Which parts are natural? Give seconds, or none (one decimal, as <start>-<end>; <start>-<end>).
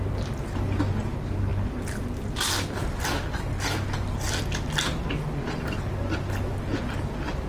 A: 0.0-7.5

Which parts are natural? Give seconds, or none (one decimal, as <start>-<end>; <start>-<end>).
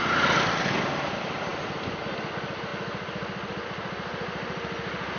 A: 0.0-5.2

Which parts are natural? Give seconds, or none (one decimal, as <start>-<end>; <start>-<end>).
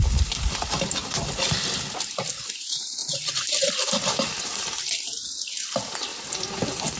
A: 1.0-2.0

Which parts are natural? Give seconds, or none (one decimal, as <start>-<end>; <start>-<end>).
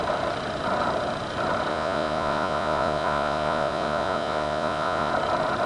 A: 0.0-1.7; 5.1-5.7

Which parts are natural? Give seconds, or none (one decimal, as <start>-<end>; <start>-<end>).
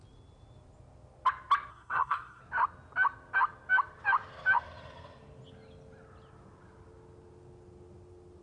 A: 0.0-1.7; 2.4-8.4